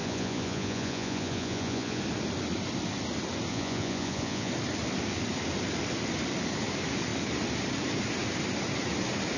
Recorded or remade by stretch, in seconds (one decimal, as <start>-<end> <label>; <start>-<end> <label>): 0.0-2.0 remade; 2.0-3.5 recorded; 3.5-4.5 remade; 4.5-9.4 recorded